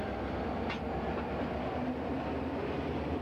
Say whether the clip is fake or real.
real